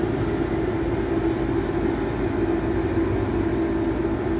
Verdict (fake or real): real